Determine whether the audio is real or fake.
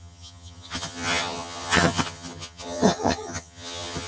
fake